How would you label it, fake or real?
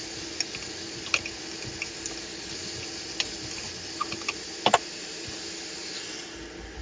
real